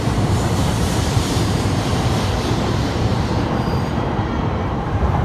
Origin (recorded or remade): remade